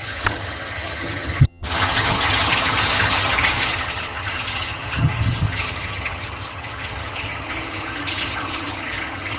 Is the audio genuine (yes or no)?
no